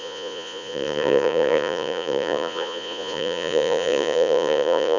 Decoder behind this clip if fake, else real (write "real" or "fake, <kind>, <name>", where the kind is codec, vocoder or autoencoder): fake, vocoder, Vocos